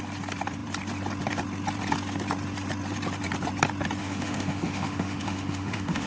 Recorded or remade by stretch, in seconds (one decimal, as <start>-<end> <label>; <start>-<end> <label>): 0.0-4.0 recorded; 4.0-6.1 remade